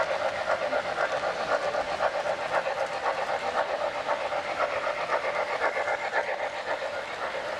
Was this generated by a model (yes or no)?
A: no